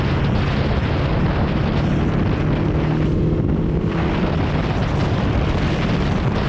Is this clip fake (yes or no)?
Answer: no